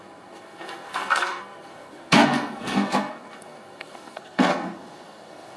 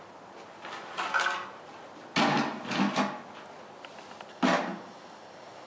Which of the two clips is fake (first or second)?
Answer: first